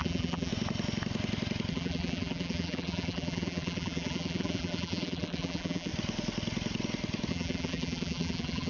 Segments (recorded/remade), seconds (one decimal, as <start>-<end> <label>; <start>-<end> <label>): 0.0-0.5 remade; 0.5-1.7 recorded; 1.7-5.9 remade; 5.9-7.3 recorded; 7.3-8.7 remade